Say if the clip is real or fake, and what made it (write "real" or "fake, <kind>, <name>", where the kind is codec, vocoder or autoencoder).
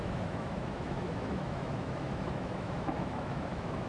fake, autoencoder, DAC-VAE